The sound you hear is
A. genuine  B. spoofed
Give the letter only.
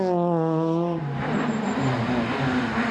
A